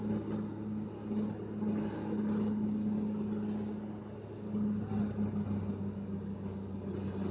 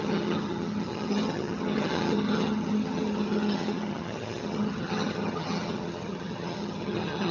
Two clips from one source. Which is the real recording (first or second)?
first